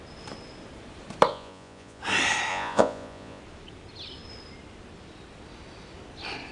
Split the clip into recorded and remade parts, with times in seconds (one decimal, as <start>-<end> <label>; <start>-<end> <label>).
0.0-1.3 recorded; 1.3-2.0 remade; 2.0-2.5 recorded; 2.5-3.4 remade; 3.4-6.5 recorded